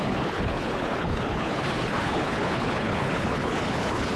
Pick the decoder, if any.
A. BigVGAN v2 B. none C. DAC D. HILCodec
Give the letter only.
D